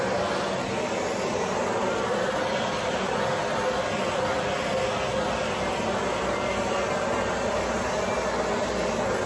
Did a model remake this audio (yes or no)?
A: no